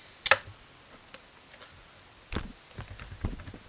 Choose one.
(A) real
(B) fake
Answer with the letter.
A